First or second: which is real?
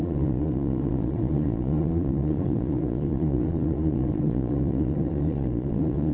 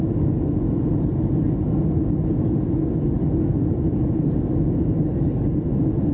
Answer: second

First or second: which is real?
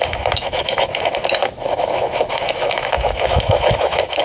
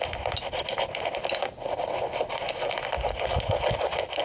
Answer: second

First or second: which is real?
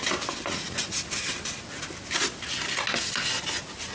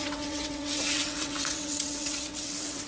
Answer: first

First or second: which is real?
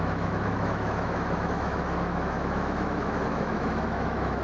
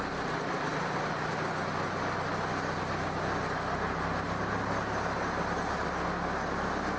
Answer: second